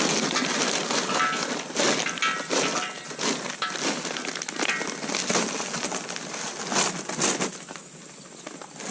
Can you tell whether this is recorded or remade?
recorded